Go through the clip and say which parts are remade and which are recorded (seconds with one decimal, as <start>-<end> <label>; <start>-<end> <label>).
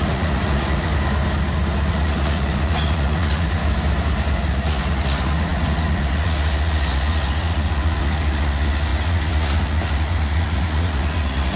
0.0-0.9 remade; 0.9-1.9 recorded; 1.9-3.6 remade; 3.6-4.4 recorded; 4.4-11.6 remade